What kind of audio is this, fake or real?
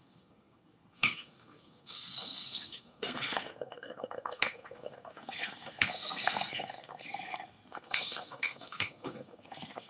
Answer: fake